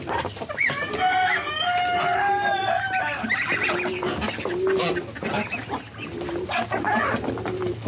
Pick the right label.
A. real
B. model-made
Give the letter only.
A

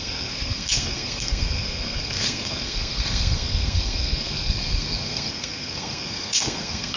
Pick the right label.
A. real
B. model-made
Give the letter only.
B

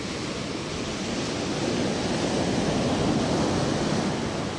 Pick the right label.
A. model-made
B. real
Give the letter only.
B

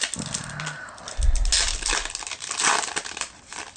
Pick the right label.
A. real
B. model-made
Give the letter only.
A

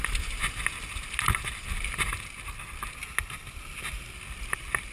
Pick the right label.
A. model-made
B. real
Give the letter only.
B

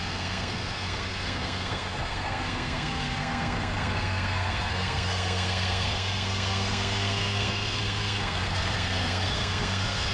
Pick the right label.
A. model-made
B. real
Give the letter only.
A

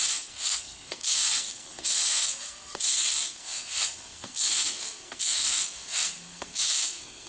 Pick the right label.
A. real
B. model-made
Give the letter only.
B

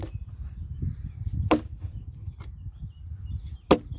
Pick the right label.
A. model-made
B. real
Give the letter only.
B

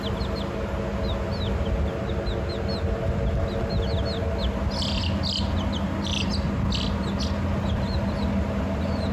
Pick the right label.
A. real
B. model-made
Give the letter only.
A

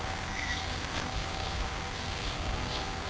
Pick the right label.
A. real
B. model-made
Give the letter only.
B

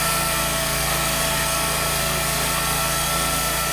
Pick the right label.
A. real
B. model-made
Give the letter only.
B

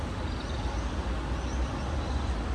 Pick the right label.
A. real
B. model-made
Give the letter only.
A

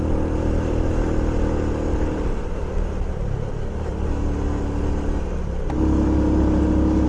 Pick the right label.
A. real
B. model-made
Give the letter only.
A